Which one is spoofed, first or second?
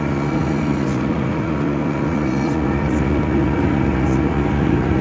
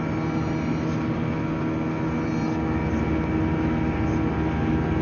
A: first